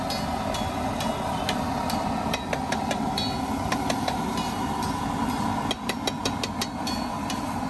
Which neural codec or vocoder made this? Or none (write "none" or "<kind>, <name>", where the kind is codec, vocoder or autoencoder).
none